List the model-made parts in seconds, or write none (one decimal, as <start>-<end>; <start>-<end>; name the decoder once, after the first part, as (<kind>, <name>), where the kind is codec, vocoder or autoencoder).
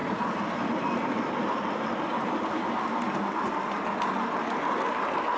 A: none